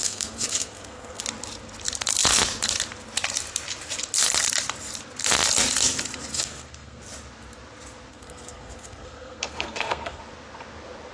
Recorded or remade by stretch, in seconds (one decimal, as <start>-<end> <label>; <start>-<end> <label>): 0.0-1.2 remade; 1.2-6.3 recorded; 6.3-7.0 remade; 7.0-8.1 recorded; 8.1-10.2 remade; 10.2-11.1 recorded